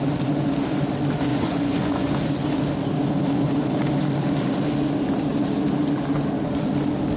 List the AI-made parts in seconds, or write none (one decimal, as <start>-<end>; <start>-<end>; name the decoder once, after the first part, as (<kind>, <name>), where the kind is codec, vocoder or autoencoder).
1.3-2.2 (vocoder, Vocos)